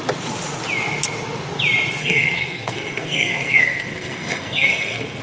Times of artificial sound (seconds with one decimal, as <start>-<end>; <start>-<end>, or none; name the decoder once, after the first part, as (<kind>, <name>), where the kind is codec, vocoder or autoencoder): 2.0-5.2 (codec, SNAC)